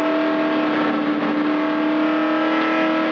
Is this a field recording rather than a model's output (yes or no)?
yes